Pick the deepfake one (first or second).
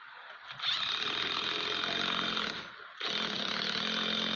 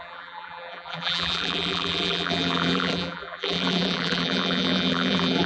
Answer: second